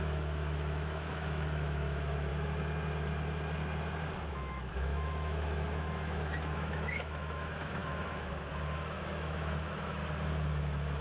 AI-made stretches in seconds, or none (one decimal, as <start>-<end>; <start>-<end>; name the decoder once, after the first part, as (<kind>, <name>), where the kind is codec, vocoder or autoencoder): 0.0-2.3 (autoencoder, DAC-VAE); 4.3-10.0; 10.6-11.0